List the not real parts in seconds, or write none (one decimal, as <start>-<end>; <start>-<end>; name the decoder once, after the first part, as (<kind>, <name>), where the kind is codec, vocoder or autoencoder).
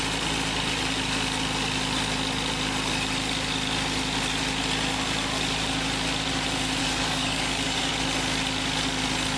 6.8-7.9 (codec, DAC)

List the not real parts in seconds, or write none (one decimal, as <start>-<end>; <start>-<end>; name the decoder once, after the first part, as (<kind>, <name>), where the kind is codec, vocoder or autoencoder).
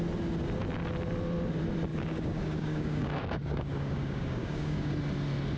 1.9-4.9 (codec, DAC)